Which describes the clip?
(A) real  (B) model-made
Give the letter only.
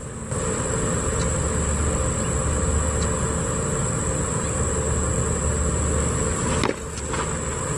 A